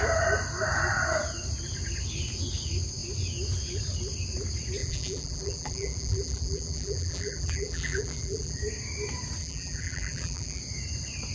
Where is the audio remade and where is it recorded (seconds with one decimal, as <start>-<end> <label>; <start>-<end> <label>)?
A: 0.0-4.8 recorded; 4.8-8.6 remade; 8.6-9.4 recorded; 9.4-10.6 remade; 10.6-11.3 recorded